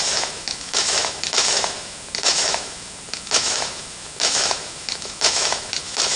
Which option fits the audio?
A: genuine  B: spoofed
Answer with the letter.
B